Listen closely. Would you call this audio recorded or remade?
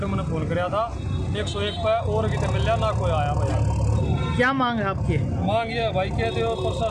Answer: recorded